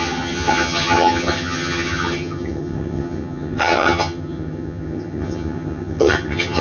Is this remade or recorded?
remade